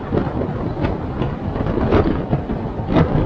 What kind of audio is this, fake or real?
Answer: real